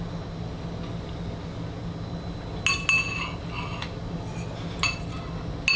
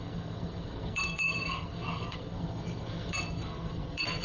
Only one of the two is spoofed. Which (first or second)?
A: second